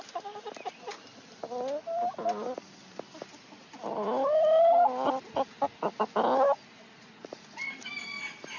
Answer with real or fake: real